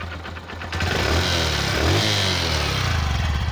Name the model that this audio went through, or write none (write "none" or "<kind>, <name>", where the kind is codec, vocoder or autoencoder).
none